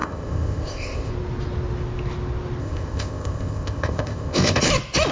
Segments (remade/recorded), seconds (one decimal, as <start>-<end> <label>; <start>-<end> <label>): 0.0-1.1 remade; 1.1-2.6 recorded; 2.6-4.6 remade; 4.6-5.1 recorded